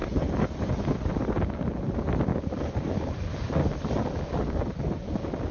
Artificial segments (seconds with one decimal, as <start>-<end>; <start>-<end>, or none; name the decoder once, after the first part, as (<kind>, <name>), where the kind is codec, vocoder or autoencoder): 0.0-0.9 (vocoder, BigVGAN v2)